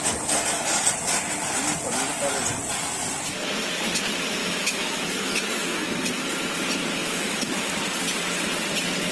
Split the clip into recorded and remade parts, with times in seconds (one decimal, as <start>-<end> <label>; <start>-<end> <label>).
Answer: 0.0-4.4 recorded; 4.4-6.1 remade; 6.1-7.0 recorded; 7.0-7.7 remade; 7.7-9.1 recorded